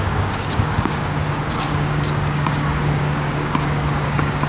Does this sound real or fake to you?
fake